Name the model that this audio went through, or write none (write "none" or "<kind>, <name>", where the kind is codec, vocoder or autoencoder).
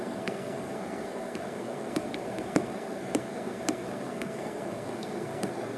codec, SNAC